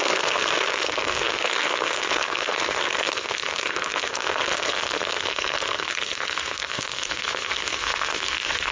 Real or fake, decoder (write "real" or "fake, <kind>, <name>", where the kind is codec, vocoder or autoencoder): fake, codec, SNAC